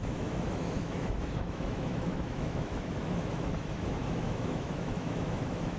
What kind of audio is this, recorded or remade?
remade